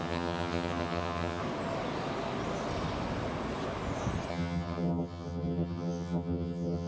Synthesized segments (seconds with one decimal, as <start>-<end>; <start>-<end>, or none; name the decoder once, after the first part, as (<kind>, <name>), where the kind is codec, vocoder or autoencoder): 0.0-1.4 (vocoder, HiFi-GAN); 4.3-6.9